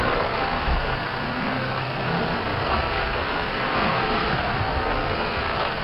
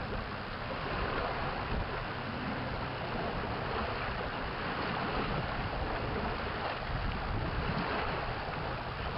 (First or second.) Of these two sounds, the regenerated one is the first